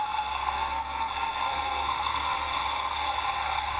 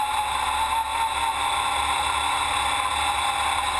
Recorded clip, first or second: second